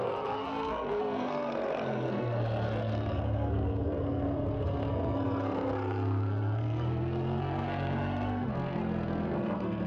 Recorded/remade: remade